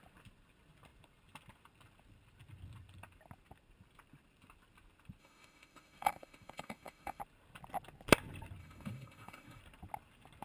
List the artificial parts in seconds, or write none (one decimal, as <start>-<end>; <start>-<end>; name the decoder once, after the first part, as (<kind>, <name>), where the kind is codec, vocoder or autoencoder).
5.2-7.2 (autoencoder, DAC-VAE); 8.6-9.6